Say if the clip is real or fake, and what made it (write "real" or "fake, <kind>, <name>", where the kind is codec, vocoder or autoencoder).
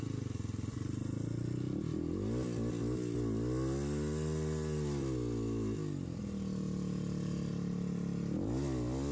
real